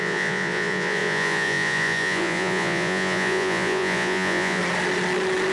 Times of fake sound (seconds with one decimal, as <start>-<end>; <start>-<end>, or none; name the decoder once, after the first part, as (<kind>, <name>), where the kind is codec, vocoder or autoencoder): 0.0-4.6 (vocoder, Vocos)